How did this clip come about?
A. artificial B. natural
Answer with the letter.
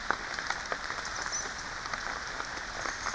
B